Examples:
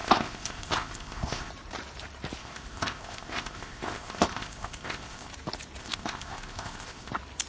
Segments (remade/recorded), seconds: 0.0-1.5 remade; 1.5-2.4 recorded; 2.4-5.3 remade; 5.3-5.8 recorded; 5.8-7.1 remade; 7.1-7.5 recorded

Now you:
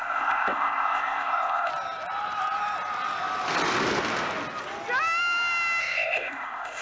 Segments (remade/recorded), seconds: 0.0-1.7 remade; 1.7-5.8 recorded; 5.8-6.8 remade